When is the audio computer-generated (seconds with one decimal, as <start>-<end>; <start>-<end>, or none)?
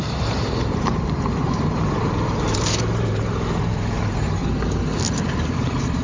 0.0-4.4; 5.6-6.0